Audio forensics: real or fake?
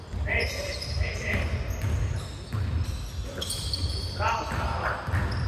real